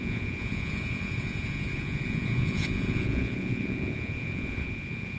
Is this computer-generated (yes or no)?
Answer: yes